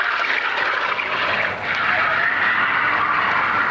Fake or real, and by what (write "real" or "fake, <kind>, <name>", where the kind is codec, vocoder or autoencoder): real